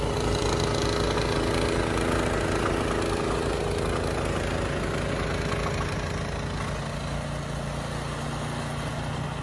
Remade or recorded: recorded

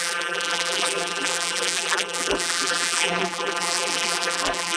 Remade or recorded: remade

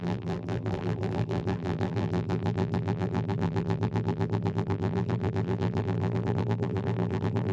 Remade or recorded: remade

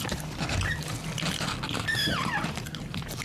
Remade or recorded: remade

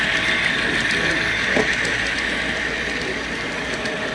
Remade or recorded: recorded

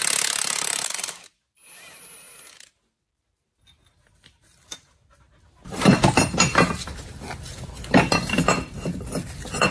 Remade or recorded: recorded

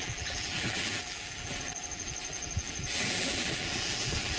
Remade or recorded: remade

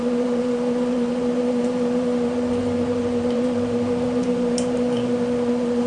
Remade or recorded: remade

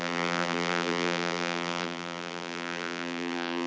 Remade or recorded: remade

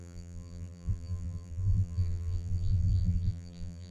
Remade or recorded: remade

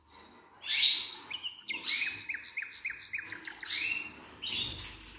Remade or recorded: recorded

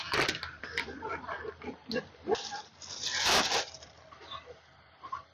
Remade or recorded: remade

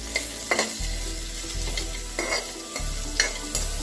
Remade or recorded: recorded